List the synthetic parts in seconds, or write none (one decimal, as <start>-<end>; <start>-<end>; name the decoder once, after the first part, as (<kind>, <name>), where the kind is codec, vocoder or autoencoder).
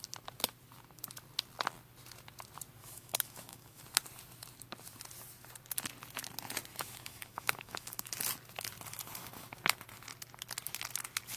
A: 2.8-3.8 (autoencoder, DAC-VAE); 6.7-8.1